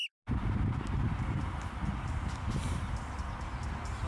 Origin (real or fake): real